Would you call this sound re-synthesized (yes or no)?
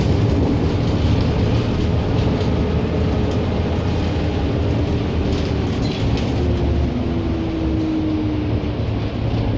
no